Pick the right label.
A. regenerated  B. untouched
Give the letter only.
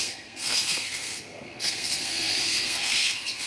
A